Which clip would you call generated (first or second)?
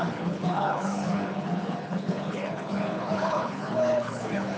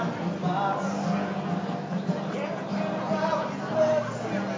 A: first